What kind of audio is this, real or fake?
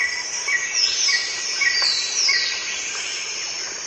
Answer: real